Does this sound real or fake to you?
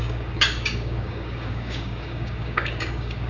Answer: fake